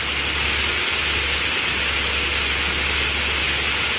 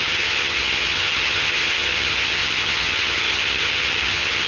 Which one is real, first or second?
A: first